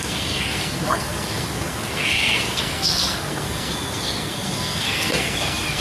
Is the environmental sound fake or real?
fake